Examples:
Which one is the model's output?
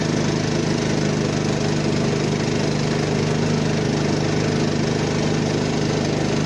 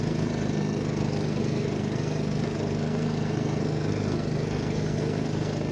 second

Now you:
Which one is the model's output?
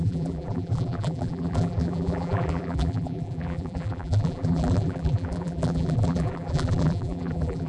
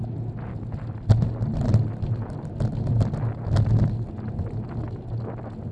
first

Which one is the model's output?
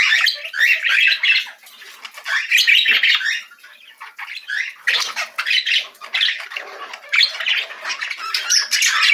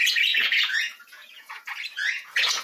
second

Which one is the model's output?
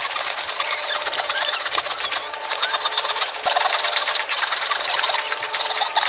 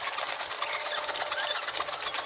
first